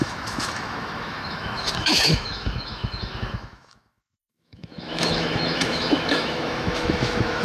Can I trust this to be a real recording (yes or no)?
no